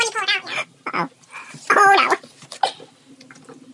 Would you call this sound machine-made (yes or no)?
no